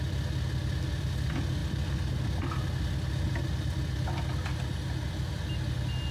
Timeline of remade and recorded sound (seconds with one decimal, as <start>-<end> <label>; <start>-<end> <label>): 0.0-6.1 recorded